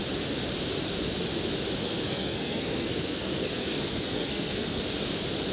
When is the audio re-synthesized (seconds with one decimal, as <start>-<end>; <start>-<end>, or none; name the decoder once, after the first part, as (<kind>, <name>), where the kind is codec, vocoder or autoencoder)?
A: 1.8-4.8 (codec, SNAC)